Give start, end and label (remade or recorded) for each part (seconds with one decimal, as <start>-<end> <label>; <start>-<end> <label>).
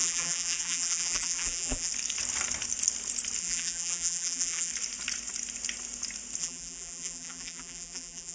0.0-1.9 remade; 1.9-3.4 recorded; 3.4-4.7 remade; 4.7-6.4 recorded; 6.4-8.3 remade